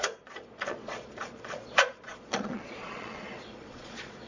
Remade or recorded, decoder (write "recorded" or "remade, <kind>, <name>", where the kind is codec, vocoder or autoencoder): remade, vocoder, Vocos